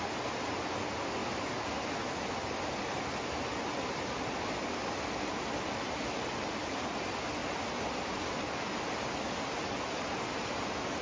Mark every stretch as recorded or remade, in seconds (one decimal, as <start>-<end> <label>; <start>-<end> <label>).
0.0-11.0 recorded